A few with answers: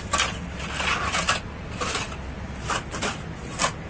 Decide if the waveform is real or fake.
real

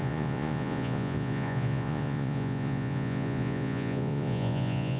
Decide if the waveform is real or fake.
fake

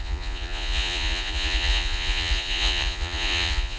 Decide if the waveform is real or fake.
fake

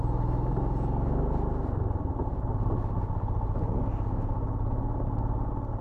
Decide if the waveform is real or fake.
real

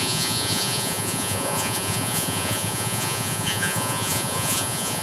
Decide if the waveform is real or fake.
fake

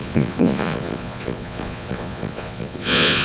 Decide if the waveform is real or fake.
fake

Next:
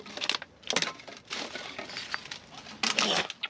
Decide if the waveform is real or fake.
real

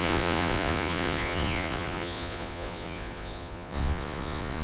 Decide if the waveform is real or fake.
fake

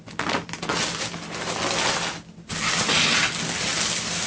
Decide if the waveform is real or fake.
real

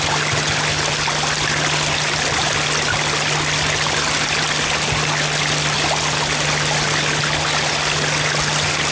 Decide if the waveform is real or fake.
real